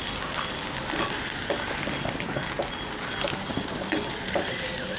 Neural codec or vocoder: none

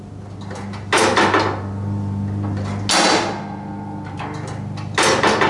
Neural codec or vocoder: none